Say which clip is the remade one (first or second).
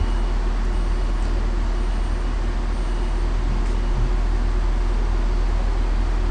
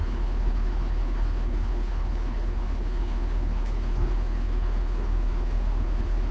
second